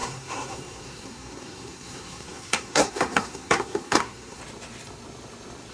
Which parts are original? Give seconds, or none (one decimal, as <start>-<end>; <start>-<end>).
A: 4.4-5.7